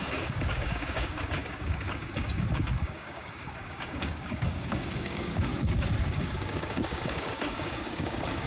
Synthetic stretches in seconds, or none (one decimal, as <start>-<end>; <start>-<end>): 0.0-5.5; 6.0-8.5